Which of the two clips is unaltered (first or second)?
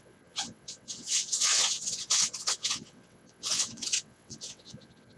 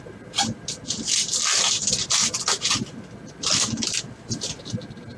second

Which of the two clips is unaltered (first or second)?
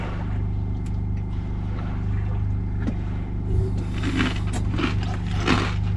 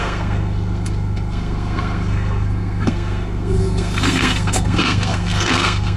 first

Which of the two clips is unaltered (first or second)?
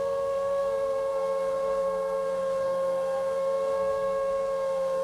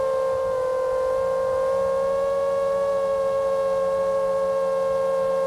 second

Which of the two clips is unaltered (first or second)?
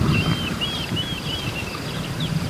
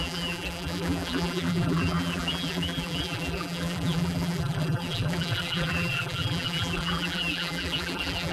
first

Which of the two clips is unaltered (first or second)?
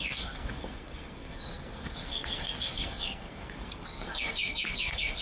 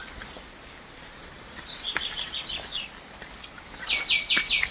second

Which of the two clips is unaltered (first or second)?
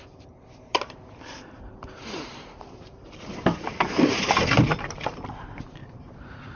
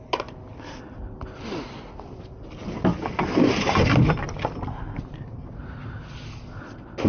second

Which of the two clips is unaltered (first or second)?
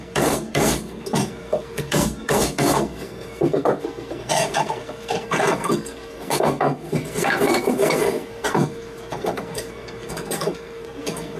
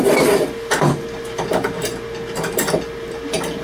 second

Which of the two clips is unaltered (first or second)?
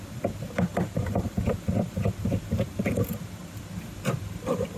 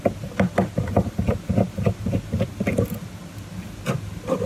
second